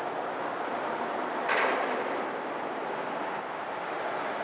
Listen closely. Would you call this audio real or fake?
real